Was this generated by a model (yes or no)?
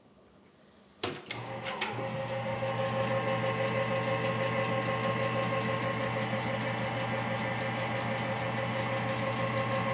no